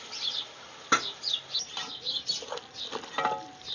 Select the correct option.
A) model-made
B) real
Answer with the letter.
B